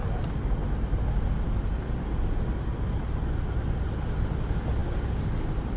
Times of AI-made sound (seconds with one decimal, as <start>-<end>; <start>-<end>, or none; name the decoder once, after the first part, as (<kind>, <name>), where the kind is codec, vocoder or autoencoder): none